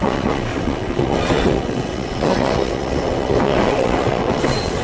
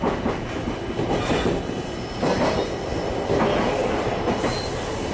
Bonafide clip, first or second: second